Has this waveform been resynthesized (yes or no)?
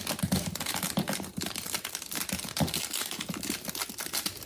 no